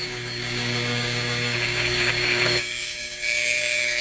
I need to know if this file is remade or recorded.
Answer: remade